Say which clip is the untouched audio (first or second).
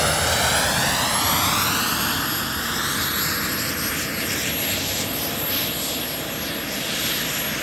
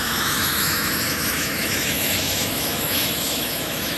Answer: first